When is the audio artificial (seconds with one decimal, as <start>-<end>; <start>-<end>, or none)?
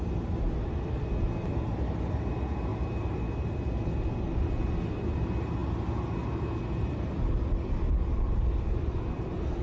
none